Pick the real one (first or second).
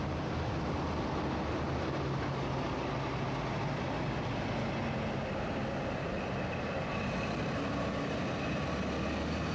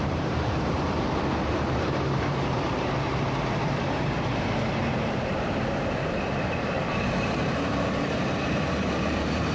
first